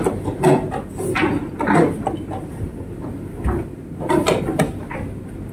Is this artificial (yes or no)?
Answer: no